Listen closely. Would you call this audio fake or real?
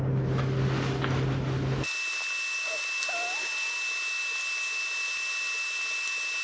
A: real